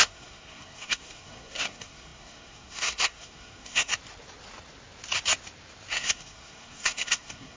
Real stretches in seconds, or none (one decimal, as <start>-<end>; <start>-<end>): 3.9-5.9